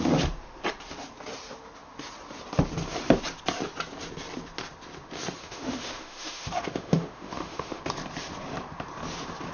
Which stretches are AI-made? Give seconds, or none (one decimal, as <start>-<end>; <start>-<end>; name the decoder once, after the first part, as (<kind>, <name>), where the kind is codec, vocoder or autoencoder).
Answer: 5.4-7.8 (autoencoder, DAC-VAE)